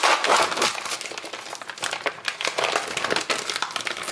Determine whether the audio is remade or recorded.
recorded